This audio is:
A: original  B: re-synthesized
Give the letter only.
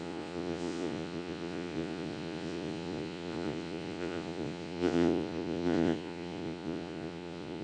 B